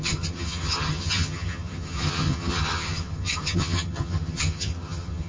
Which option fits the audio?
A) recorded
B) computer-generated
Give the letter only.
B